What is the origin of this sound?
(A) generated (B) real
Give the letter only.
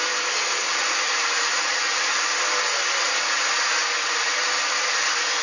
B